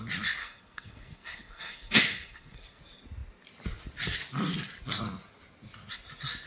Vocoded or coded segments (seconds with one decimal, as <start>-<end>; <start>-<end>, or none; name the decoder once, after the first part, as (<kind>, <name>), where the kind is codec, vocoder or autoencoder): 0.4-2.8 (codec, SNAC)